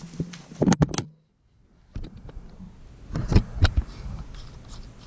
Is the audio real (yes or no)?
yes